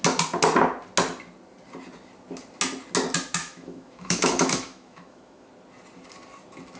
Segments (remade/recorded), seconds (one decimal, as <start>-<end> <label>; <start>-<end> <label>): 0.0-3.4 recorded; 3.4-5.5 remade; 5.5-6.8 recorded